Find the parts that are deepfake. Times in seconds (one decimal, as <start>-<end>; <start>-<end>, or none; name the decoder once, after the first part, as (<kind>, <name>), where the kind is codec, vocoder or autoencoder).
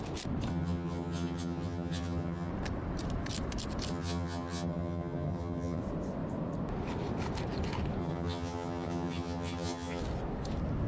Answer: 0.5-2.5 (vocoder, HiFi-GAN); 3.9-5.8; 8.0-10.0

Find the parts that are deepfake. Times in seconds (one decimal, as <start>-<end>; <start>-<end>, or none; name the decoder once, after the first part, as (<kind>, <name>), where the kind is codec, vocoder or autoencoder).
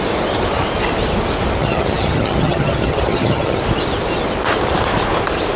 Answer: 1.6-3.6 (vocoder, HiFi-GAN)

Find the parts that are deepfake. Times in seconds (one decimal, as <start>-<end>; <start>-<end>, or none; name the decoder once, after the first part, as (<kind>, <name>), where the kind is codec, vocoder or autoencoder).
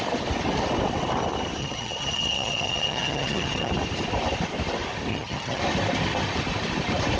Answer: 1.6-3.7 (vocoder, HiFi-GAN); 5.1-5.6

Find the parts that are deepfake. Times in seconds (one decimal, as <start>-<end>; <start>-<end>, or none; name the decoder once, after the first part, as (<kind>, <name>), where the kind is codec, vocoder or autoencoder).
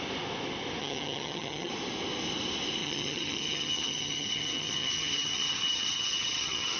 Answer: 0.8-1.7 (vocoder, HiFi-GAN); 2.8-6.8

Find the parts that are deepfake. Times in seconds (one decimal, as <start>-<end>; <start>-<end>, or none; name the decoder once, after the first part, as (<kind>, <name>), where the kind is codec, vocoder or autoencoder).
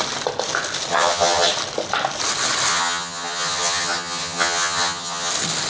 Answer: 0.9-1.5 (vocoder, HiFi-GAN); 2.7-5.3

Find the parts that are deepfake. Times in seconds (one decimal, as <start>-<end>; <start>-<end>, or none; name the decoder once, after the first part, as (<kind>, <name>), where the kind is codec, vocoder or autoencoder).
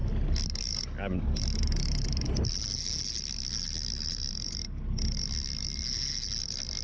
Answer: none